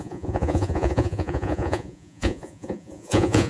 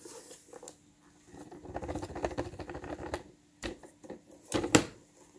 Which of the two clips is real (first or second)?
second